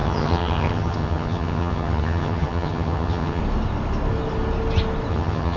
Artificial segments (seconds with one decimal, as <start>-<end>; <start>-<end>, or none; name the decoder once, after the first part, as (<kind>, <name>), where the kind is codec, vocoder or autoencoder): 0.0-3.4 (vocoder, HiFi-GAN); 5.1-5.6